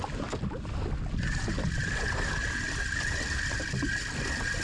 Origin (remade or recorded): recorded